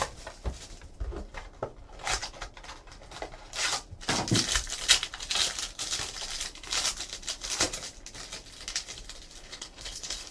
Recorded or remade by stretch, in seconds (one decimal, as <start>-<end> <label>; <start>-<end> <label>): 0.0-9.4 recorded; 9.4-10.3 remade